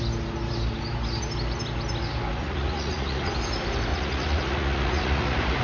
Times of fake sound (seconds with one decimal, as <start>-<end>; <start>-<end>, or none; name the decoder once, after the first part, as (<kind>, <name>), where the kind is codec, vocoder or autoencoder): 2.4-3.3 (vocoder, Vocos); 3.9-5.6

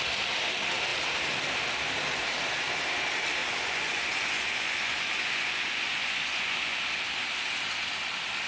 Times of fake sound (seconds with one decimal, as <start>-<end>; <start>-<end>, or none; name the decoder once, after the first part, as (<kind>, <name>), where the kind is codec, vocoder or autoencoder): 3.4-6.8 (vocoder, Vocos)

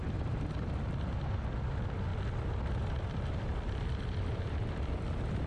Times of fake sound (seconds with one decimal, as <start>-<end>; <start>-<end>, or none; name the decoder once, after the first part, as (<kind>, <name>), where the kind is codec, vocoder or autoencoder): none